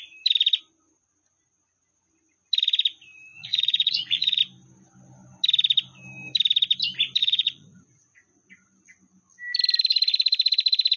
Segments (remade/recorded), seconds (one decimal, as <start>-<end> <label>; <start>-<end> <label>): 0.0-3.3 recorded; 3.3-4.4 remade; 4.4-7.2 recorded; 7.2-8.5 remade; 8.5-11.0 recorded